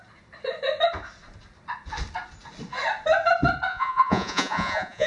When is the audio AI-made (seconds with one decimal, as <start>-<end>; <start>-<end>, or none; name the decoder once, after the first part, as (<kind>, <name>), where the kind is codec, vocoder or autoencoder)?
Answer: 3.7-5.1 (vocoder, Vocos)